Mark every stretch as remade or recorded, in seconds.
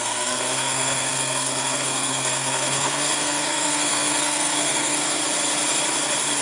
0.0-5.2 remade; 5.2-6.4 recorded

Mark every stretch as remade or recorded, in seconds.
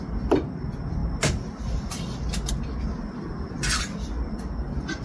0.0-5.0 recorded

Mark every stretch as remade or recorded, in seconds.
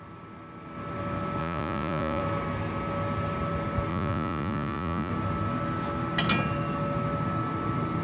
0.0-1.4 recorded; 1.4-2.2 remade; 2.2-3.9 recorded; 3.9-5.1 remade; 5.1-8.0 recorded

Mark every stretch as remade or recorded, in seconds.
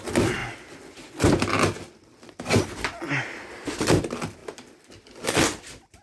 0.0-0.4 remade; 0.4-4.0 recorded; 4.0-4.4 remade; 4.4-5.6 recorded; 5.6-6.0 remade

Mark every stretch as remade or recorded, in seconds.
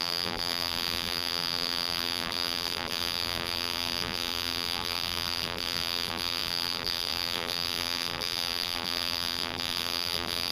0.0-10.5 remade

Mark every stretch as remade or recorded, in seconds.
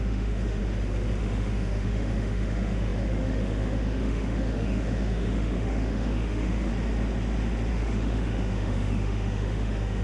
0.0-0.6 remade; 0.6-1.2 recorded; 1.2-6.7 remade; 6.7-7.7 recorded; 7.7-10.0 remade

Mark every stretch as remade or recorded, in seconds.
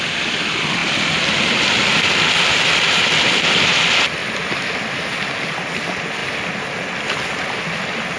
0.0-6.2 remade; 6.2-8.2 recorded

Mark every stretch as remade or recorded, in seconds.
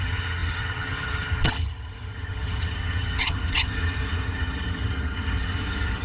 0.0-6.0 remade